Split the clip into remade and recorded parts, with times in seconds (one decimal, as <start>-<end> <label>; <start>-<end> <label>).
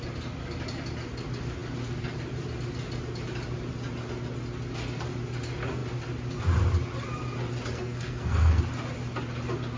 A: 0.0-7.7 recorded; 7.7-8.6 remade; 8.6-9.8 recorded